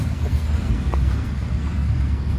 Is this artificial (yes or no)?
yes